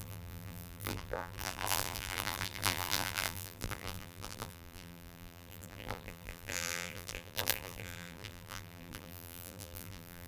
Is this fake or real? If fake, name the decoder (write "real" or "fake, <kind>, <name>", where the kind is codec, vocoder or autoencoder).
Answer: fake, vocoder, BigVGAN v2